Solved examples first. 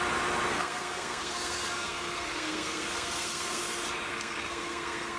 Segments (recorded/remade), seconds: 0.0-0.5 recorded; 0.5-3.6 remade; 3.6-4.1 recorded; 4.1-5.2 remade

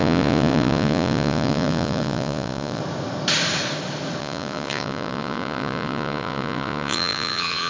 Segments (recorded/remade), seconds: 0.0-2.8 remade; 2.8-4.2 recorded; 4.2-7.7 remade

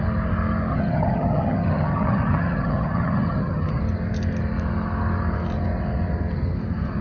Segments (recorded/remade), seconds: 0.0-0.7 recorded; 0.7-3.8 remade; 3.8-7.0 recorded

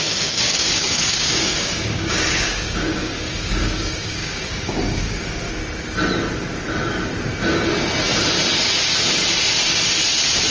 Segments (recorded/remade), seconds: 0.0-5.6 remade; 5.6-10.5 recorded

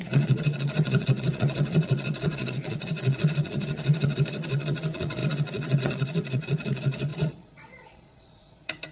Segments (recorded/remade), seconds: 0.0-8.9 remade

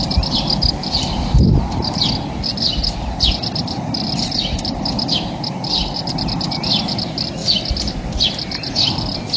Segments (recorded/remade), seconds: 0.0-9.4 recorded

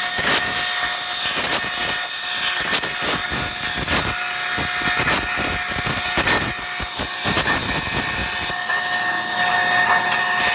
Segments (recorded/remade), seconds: 0.0-10.5 recorded

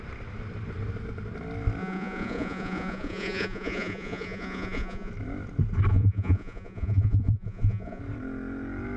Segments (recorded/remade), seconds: 0.0-1.8 recorded; 1.8-5.1 remade; 5.1-5.9 recorded; 5.9-8.0 remade; 8.0-9.0 recorded